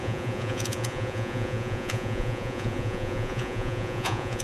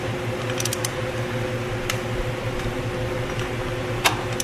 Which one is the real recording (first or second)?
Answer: second